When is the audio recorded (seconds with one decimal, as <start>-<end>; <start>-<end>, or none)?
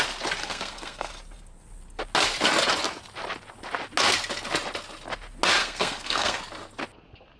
0.0-0.4; 1.1-5.6; 6.4-7.4